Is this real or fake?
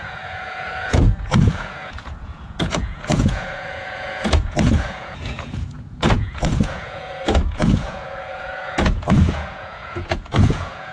fake